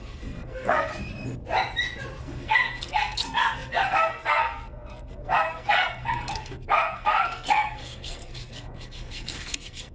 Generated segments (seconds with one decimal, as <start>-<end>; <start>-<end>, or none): 0.0-0.9; 2.2-9.9